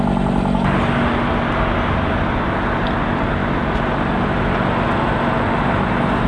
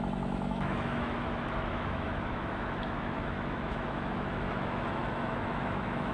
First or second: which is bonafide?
first